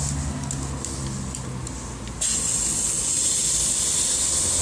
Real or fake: real